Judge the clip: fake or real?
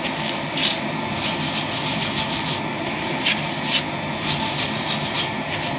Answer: real